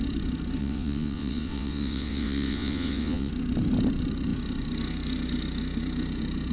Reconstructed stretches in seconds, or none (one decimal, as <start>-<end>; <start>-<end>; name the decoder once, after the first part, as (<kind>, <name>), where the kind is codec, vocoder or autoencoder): 0.6-3.3 (vocoder, WaveNeXt)